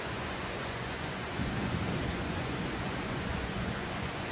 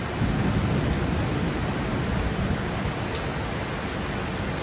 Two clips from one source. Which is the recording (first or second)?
second